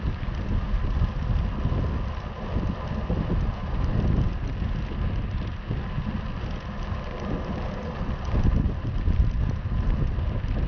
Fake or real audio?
real